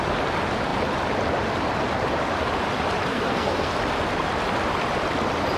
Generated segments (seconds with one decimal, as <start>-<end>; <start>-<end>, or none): 3.1-3.7